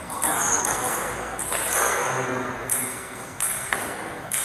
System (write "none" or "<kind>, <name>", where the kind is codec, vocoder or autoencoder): codec, SNAC